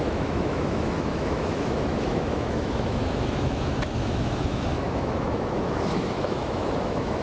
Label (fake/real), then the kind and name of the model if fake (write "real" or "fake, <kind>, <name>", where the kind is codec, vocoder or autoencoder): fake, autoencoder, DAC-VAE